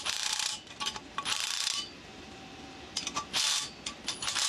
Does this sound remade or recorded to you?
remade